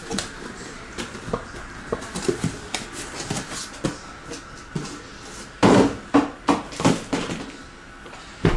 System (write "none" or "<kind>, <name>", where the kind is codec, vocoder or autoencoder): none